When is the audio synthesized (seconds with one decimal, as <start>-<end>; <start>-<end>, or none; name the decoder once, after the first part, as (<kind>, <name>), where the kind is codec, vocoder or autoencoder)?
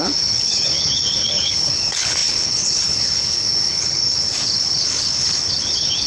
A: 0.0-6.1 (codec, HILCodec)